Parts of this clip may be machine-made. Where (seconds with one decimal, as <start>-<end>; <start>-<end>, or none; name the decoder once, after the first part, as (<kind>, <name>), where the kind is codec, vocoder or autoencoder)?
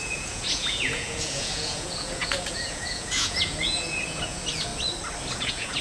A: 0.0-4.7 (vocoder, Vocos); 5.3-5.8